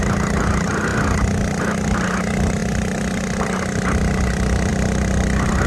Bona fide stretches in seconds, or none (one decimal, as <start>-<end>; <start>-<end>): 0.0-5.7